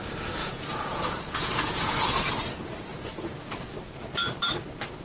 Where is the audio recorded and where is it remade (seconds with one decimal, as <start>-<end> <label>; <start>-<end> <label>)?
0.0-0.4 recorded; 0.4-2.3 remade; 2.3-2.9 recorded; 2.9-4.0 remade; 4.0-5.0 recorded